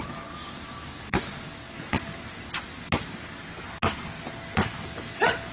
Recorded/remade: recorded